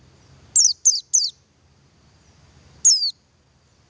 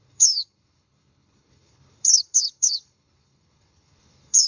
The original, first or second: first